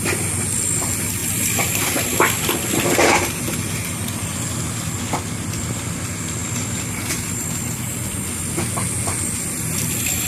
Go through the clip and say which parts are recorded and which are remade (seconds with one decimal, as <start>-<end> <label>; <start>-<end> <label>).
0.0-10.3 recorded